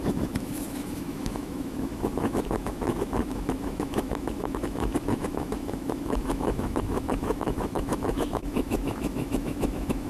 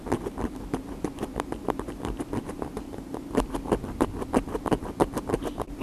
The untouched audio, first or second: second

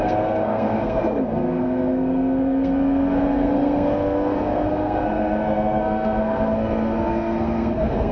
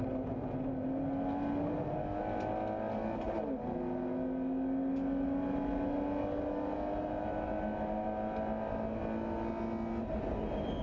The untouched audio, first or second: second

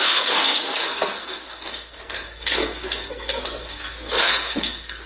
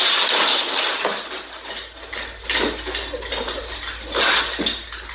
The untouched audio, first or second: second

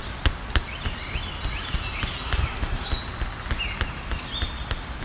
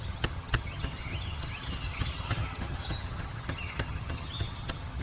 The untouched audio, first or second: first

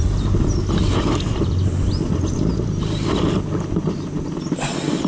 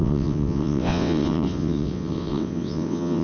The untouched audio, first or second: first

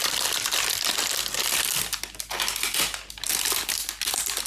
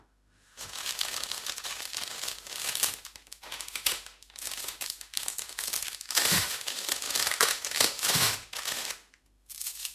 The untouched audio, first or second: first